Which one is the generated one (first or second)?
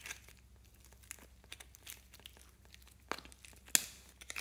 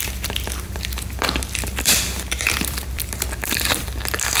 second